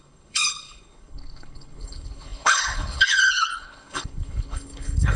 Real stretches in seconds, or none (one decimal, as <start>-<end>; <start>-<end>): none